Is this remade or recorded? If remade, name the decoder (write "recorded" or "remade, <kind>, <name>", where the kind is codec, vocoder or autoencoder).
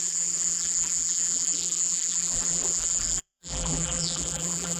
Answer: remade, vocoder, BigVGAN v2